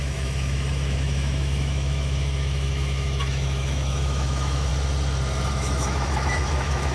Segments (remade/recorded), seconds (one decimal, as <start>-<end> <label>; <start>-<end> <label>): 0.0-4.7 remade; 4.7-5.5 recorded; 5.5-6.9 remade